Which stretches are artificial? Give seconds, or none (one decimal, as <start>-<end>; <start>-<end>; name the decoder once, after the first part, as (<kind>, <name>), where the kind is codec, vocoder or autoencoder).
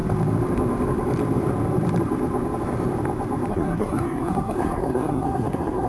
3.5-5.9 (codec, SNAC)